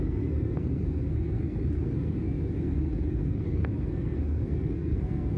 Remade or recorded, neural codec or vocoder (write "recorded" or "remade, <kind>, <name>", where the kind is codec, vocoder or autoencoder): remade, codec, SNAC